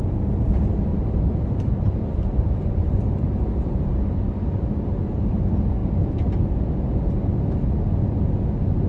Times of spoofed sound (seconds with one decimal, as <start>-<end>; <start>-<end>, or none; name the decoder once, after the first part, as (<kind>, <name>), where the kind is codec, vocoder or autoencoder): 0.9-3.9 (vocoder, BigVGAN v2)